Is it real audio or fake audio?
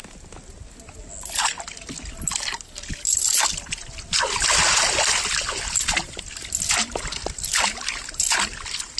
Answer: real